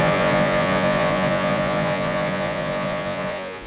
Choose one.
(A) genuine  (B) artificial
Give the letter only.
B